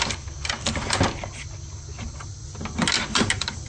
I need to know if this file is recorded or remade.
recorded